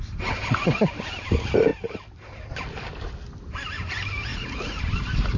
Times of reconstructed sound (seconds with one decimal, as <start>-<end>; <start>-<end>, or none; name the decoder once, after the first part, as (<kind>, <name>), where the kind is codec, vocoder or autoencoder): 4.3-4.8 (vocoder, Vocos)

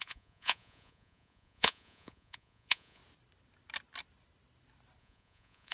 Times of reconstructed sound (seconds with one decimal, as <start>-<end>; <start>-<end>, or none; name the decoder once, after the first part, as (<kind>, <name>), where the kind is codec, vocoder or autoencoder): 0.0-3.0 (vocoder, Vocos); 5.0-5.7

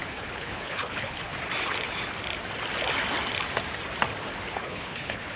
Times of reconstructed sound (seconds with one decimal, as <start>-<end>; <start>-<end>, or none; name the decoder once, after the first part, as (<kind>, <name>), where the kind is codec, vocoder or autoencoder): 0.0-1.3 (codec, HILCodec); 4.5-5.4

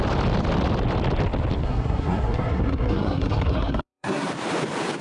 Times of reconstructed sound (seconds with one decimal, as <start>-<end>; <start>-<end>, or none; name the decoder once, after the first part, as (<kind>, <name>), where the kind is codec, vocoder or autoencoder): 1.6-4.3 (codec, SNAC)

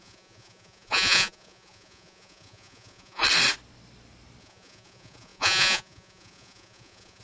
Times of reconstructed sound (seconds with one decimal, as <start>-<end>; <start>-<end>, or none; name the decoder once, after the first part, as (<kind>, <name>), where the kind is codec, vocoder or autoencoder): 0.0-3.2 (vocoder, Vocos); 4.4-7.2

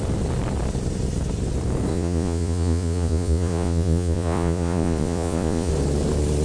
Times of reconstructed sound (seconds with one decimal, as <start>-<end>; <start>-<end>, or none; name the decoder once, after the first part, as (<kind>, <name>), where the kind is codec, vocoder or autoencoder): 1.9-5.7 (vocoder, Vocos)